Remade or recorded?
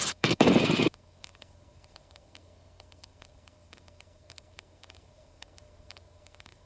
remade